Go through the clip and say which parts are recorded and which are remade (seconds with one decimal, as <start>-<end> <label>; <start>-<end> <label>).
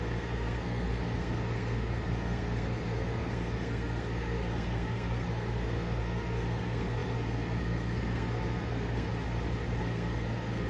0.0-9.1 remade; 9.1-9.8 recorded; 9.8-10.7 remade